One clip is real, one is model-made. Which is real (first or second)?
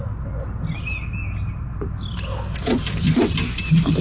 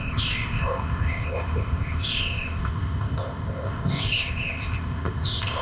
first